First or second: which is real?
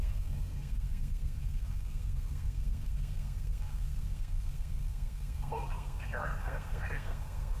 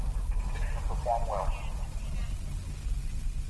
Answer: second